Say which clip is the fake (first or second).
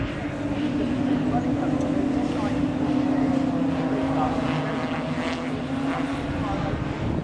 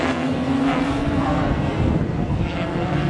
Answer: second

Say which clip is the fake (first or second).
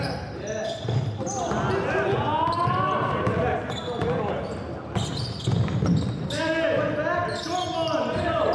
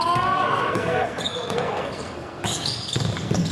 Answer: second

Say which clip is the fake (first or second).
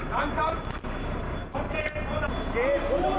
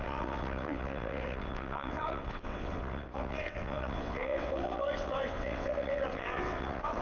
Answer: second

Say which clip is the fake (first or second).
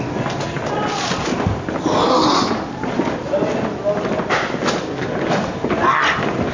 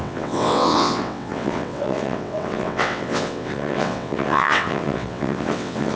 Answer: second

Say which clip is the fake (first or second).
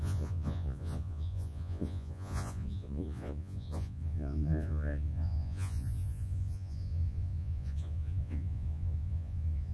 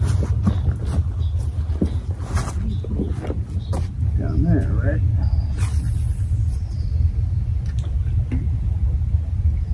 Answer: first